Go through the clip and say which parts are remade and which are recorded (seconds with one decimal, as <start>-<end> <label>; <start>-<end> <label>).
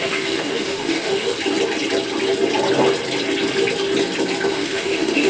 0.0-1.3 remade; 1.3-4.5 recorded; 4.5-5.3 remade